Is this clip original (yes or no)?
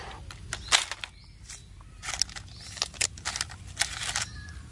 yes